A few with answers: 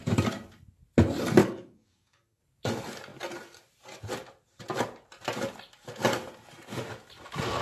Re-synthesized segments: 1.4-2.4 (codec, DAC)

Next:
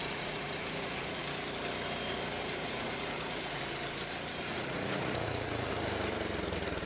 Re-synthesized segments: 0.0-1.2 (vocoder, Vocos); 2.6-3.6; 4.5-5.7

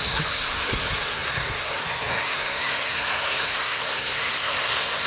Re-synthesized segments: 0.0-5.1 (codec, SNAC)

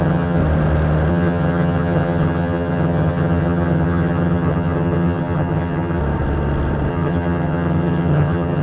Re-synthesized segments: 0.0-0.4 (vocoder, HiFi-GAN); 1.1-6.0; 6.9-8.6

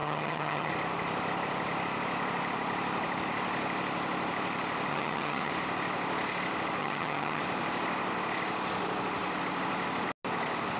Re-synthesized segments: 0.0-0.7 (vocoder, HiFi-GAN); 4.9-5.5; 6.8-7.4

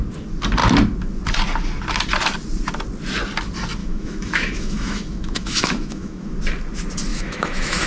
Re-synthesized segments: 3.8-6.3 (autoencoder, DAC-VAE); 7.1-7.9

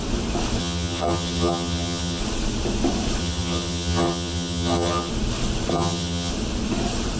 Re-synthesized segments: 0.6-2.2 (vocoder, HiFi-GAN); 3.2-5.1; 5.7-6.3